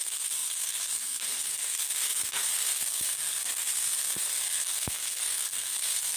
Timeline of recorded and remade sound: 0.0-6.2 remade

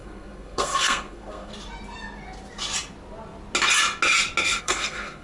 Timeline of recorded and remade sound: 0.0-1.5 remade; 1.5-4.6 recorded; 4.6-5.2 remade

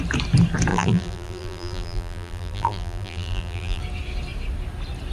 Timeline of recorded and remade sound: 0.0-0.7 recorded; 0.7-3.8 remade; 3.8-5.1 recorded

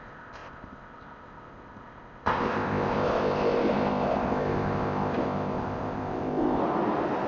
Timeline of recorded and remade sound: 0.0-6.6 remade; 6.6-7.3 recorded

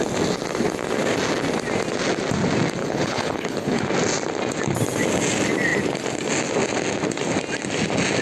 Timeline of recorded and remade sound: 0.0-2.8 recorded; 2.8-3.8 remade; 3.8-8.2 recorded

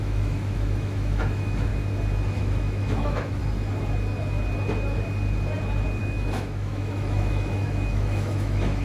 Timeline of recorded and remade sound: 0.0-1.7 remade; 1.7-2.3 recorded; 2.3-3.4 remade; 3.4-6.0 recorded; 6.0-8.8 remade